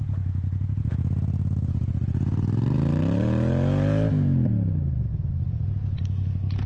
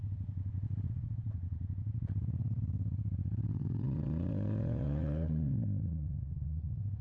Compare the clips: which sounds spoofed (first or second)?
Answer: second